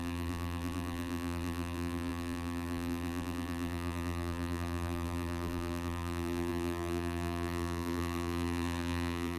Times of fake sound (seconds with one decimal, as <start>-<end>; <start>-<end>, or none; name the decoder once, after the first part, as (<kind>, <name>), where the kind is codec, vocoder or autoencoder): 0.0-9.4 (vocoder, BigVGAN v2)